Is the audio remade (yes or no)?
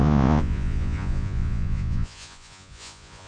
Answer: yes